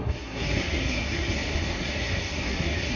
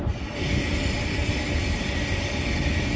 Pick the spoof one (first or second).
first